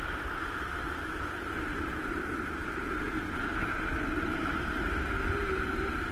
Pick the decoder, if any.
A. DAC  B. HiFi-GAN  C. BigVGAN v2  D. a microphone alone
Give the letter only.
C